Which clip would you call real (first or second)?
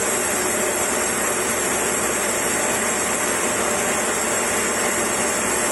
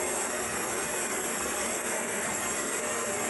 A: first